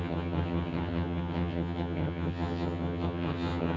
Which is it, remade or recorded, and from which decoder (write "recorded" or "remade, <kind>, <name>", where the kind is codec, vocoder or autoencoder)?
remade, vocoder, HiFi-GAN